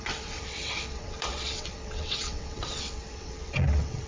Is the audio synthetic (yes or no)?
yes